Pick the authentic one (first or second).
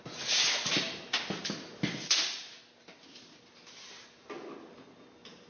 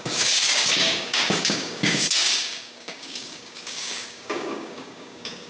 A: first